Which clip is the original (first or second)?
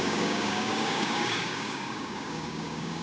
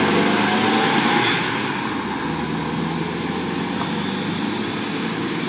second